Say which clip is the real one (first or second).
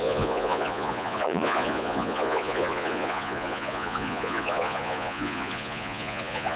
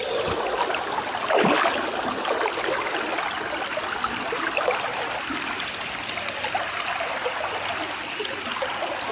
second